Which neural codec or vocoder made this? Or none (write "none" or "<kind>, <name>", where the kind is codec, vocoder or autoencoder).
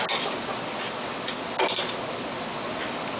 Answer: none